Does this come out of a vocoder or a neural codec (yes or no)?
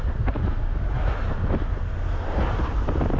no